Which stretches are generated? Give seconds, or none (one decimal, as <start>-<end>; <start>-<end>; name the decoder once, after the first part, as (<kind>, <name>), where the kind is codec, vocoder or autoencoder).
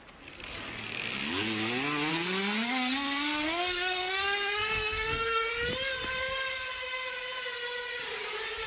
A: 2.1-5.5 (codec, SNAC)